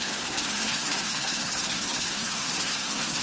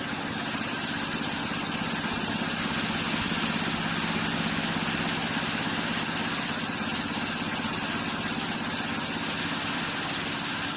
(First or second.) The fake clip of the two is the first